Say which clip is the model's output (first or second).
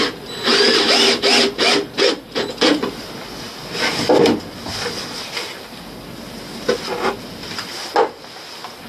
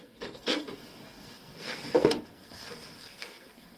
second